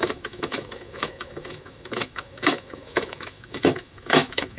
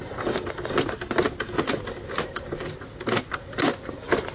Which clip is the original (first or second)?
second